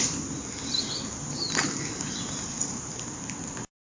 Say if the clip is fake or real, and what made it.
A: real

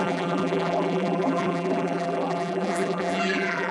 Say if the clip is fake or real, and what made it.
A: fake, vocoder, BigVGAN v2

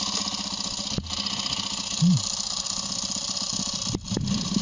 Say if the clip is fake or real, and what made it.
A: real